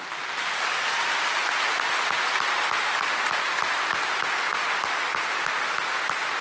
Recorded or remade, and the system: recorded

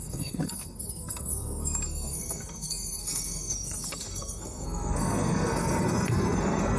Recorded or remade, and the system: remade, codec, SNAC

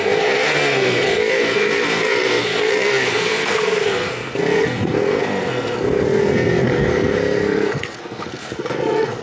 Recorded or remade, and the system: remade, codec, SNAC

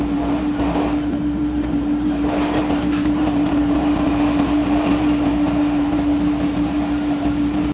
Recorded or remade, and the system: remade, vocoder, BigVGAN v2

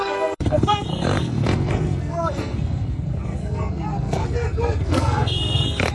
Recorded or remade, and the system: remade, codec, SNAC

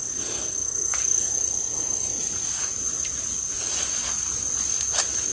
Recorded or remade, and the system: recorded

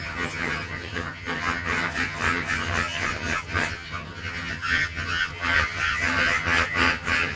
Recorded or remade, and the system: remade, vocoder, HiFi-GAN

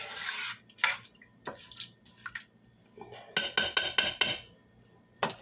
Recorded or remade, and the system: recorded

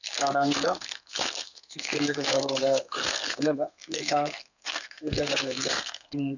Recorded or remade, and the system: remade, codec, SNAC